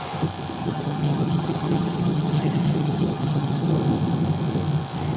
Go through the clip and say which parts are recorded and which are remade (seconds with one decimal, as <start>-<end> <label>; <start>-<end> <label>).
0.0-0.6 recorded; 0.6-3.7 remade; 3.7-5.2 recorded